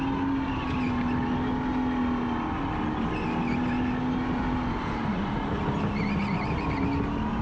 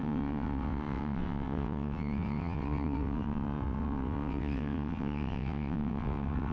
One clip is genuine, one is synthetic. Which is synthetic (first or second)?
second